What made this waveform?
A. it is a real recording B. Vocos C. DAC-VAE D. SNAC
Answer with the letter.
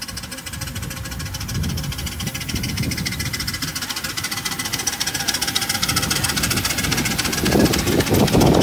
A